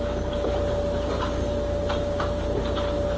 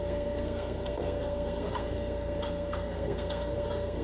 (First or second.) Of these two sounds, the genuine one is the first